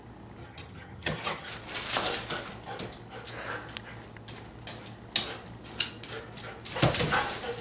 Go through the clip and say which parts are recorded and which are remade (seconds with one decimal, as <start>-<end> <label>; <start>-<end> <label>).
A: 0.0-0.4 recorded; 0.4-1.5 remade; 1.5-7.6 recorded